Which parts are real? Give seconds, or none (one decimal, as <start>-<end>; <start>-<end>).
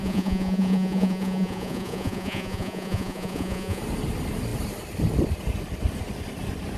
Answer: 3.8-6.8